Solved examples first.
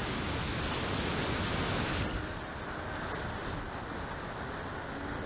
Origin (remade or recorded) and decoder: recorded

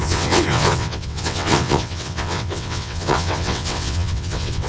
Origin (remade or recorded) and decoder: remade, vocoder, WaveNeXt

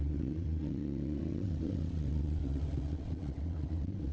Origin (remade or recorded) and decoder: remade, vocoder, WaveNeXt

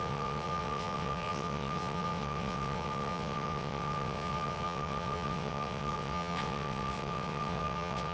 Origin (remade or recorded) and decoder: remade, vocoder, WaveNeXt